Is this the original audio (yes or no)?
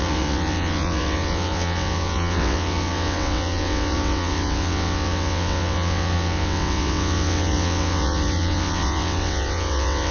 no